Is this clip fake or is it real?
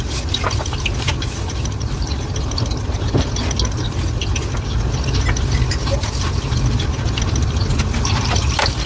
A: real